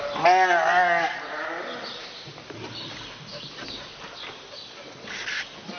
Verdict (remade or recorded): recorded